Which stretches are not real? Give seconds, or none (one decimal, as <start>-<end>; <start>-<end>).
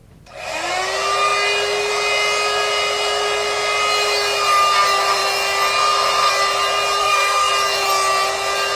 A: 7.0-7.5